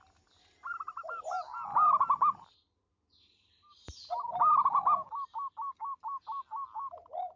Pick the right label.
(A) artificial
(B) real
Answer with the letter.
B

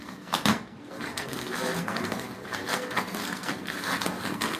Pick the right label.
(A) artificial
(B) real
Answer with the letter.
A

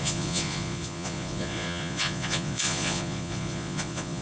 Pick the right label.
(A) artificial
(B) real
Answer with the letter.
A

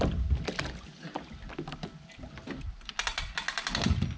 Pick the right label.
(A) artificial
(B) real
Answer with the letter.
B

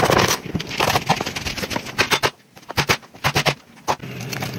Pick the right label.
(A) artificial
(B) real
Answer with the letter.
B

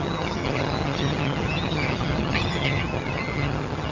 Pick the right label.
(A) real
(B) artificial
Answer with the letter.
B